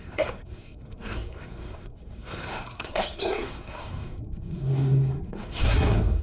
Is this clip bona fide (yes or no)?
no